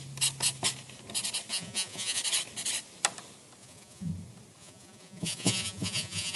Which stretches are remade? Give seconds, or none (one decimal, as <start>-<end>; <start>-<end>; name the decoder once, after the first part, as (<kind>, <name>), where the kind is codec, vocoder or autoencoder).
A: 1.5-2.2 (vocoder, Vocos); 3.6-4.1; 4.6-6.4